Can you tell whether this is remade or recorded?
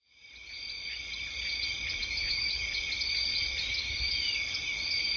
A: recorded